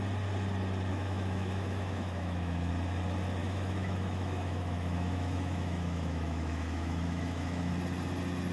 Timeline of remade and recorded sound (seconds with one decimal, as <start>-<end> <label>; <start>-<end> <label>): 0.0-0.9 recorded; 0.9-2.7 remade; 2.7-3.4 recorded; 3.4-7.7 remade; 7.7-8.5 recorded